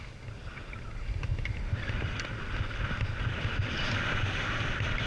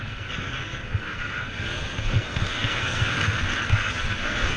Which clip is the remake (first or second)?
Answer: second